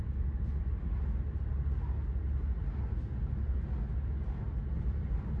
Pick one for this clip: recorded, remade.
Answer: recorded